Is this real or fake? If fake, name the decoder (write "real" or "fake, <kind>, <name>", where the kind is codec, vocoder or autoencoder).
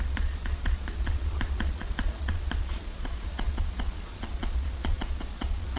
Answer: fake, vocoder, Vocos